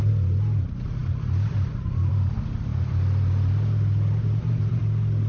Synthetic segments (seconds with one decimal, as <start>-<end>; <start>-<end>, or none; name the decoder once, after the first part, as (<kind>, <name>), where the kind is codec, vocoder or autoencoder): none